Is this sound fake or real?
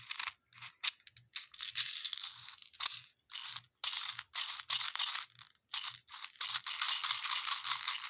real